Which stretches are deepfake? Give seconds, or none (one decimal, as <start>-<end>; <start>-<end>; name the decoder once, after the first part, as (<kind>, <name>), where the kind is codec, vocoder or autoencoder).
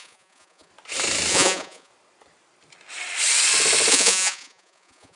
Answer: 0.0-0.7 (vocoder, Vocos); 1.3-1.9; 3.9-5.2